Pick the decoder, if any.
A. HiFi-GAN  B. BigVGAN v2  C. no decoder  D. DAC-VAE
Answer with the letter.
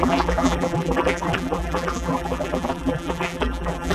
B